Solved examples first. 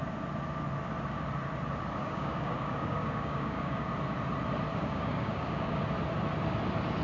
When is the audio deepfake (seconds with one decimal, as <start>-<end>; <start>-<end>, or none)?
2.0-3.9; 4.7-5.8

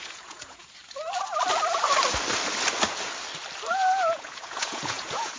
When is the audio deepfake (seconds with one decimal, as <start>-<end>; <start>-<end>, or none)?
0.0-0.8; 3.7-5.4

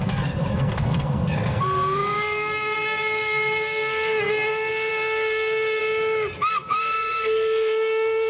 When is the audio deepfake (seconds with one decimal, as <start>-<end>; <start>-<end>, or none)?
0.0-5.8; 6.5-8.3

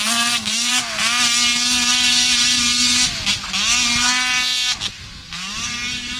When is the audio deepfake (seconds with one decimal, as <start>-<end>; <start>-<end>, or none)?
0.0-0.7

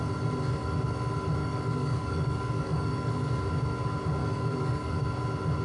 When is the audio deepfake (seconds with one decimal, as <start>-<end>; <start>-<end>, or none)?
1.4-3.4; 4.2-5.0